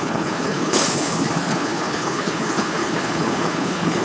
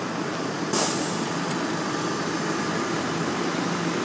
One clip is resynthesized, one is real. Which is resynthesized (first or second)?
first